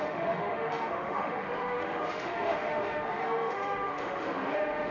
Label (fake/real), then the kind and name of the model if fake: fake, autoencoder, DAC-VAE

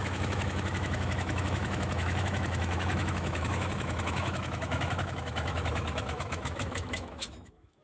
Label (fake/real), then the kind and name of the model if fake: fake, autoencoder, DAC-VAE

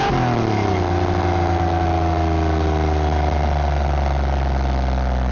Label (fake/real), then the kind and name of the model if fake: real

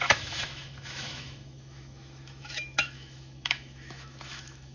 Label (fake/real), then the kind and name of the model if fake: fake, autoencoder, DAC-VAE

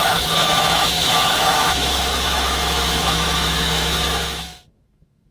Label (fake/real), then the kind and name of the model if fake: fake, autoencoder, DAC-VAE